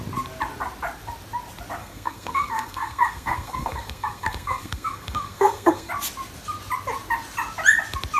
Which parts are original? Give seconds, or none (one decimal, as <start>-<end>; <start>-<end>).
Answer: 0.0-1.8; 5.9-8.2